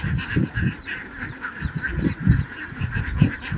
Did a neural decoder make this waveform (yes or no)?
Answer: no